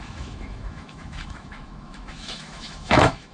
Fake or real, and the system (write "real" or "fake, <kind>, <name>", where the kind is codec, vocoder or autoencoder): fake, autoencoder, DAC-VAE